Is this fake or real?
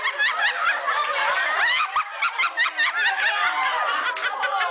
real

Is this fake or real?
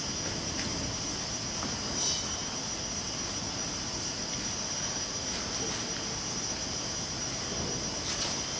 real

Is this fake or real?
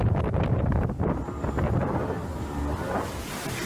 real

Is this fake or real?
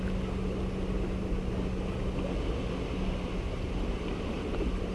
real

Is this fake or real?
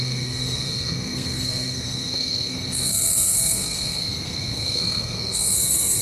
fake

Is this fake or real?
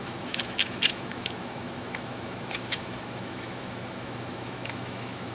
fake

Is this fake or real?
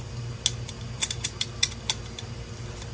real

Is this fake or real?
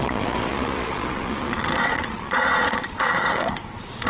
fake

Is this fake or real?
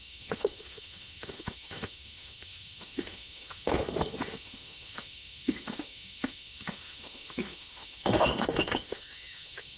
fake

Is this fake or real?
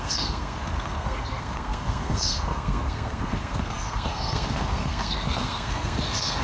fake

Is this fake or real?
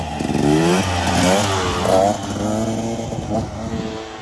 real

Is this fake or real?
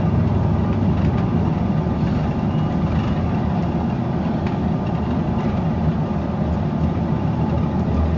real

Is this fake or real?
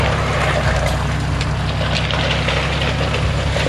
real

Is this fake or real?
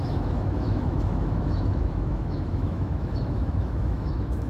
fake